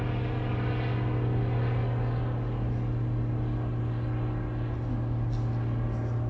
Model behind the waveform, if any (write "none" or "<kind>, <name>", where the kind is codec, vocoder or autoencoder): none